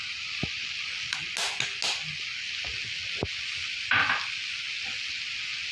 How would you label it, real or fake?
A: real